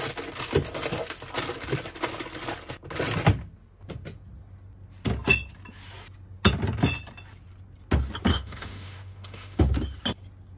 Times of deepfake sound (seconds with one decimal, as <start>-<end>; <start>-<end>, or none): 8.3-9.6